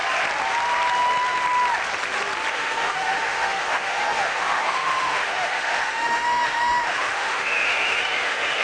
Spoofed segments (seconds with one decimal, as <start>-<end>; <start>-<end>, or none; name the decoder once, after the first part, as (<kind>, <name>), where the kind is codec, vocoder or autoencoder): 2.5-8.6 (autoencoder, DAC-VAE)